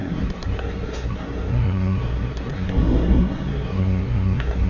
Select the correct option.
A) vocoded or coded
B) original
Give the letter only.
A